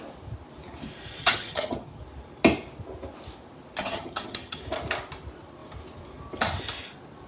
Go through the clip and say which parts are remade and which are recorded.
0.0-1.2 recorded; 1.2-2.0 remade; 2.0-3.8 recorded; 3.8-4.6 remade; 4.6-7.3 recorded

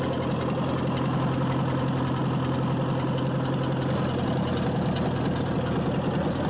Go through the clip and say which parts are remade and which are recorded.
0.0-6.5 recorded